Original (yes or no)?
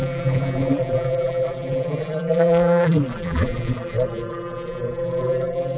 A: no